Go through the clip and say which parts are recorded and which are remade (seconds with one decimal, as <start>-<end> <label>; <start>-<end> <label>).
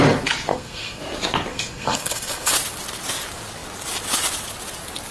0.0-0.5 recorded; 0.5-1.0 remade; 1.0-1.5 recorded; 1.5-2.5 remade; 2.5-5.1 recorded